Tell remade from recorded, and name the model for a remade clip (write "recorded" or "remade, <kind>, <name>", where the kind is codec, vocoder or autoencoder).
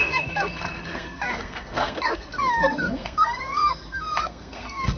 remade, codec, SNAC